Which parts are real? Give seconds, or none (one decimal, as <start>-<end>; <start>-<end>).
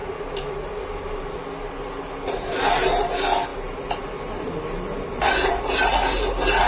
0.0-6.7